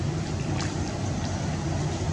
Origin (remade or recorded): remade